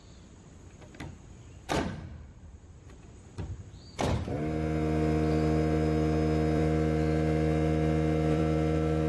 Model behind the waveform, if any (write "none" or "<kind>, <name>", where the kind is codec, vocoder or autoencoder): vocoder, BigVGAN v2